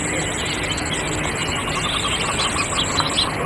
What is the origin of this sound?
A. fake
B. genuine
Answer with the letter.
B